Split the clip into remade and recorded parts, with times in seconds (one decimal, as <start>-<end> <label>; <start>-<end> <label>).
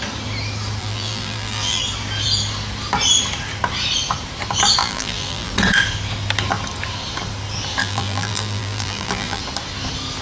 0.0-0.8 recorded; 0.8-1.8 remade; 1.8-4.8 recorded; 4.8-5.5 remade; 5.5-7.8 recorded; 7.8-9.4 remade; 9.4-10.2 recorded